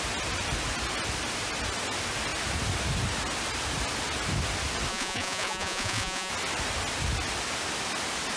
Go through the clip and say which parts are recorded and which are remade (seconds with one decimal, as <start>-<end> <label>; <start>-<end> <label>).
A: 0.0-4.9 recorded; 4.9-6.3 remade; 6.3-8.4 recorded